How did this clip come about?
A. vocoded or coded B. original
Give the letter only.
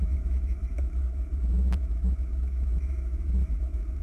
A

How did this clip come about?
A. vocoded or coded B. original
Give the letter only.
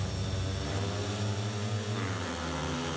B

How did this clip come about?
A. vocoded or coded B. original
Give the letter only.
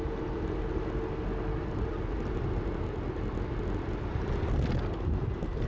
B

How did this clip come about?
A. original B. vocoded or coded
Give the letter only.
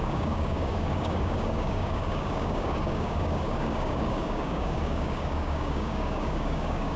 B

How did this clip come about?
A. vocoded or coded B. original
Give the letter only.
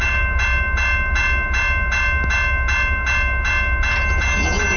B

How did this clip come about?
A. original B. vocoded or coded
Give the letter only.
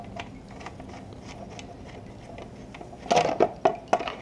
A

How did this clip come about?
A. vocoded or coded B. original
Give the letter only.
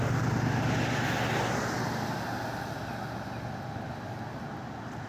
B